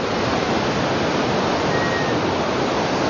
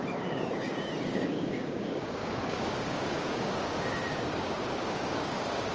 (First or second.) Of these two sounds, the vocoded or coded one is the second